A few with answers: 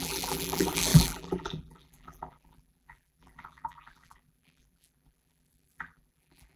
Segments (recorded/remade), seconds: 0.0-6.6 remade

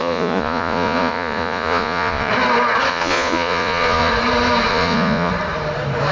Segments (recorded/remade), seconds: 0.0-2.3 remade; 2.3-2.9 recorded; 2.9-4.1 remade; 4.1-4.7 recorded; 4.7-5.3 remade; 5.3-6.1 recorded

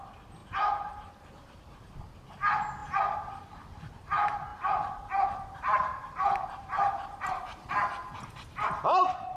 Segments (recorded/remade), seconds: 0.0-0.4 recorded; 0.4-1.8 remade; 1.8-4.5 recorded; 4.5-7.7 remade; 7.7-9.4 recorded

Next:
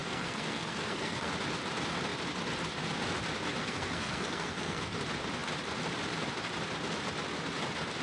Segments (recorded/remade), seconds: 0.0-1.3 remade; 1.3-3.6 recorded; 3.6-5.0 remade; 5.0-8.0 recorded

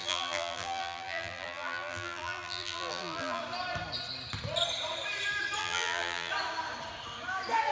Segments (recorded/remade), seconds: 0.0-3.4 remade; 3.4-5.6 recorded; 5.6-6.3 remade; 6.3-7.7 recorded